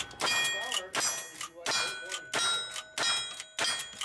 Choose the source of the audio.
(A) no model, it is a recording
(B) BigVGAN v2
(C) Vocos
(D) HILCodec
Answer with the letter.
A